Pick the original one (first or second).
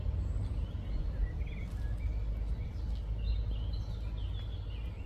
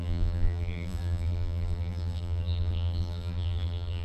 first